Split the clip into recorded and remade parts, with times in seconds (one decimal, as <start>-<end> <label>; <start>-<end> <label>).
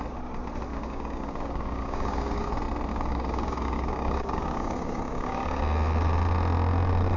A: 0.0-0.7 recorded; 0.7-2.5 remade; 2.5-2.9 recorded; 2.9-5.6 remade; 5.6-7.2 recorded